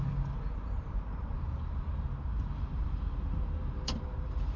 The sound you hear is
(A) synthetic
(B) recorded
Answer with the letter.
A